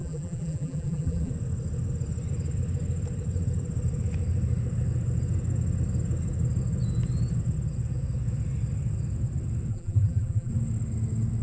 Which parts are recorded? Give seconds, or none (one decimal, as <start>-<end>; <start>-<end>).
1.3-9.7; 10.5-11.4